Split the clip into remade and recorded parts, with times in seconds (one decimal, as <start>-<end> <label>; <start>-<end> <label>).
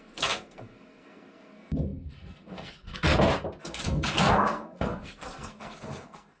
0.0-3.1 remade; 3.1-3.6 recorded; 3.6-6.4 remade